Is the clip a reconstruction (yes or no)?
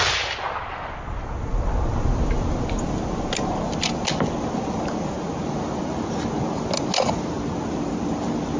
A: no